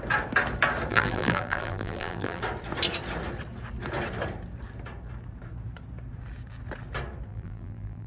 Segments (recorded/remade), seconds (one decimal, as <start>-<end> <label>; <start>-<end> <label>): 0.0-0.9 recorded; 0.9-2.4 remade; 2.4-7.3 recorded; 7.3-8.1 remade